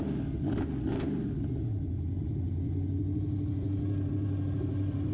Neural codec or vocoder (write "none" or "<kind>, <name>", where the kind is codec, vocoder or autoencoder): none